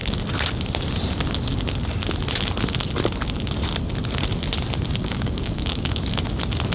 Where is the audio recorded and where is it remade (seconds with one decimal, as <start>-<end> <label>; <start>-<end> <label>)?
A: 0.0-5.0 recorded; 5.0-6.0 remade; 6.0-6.7 recorded